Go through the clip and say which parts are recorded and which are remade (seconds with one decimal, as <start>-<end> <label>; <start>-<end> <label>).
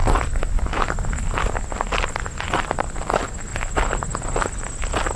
0.0-5.2 recorded